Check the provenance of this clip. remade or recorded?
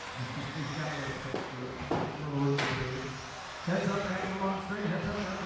recorded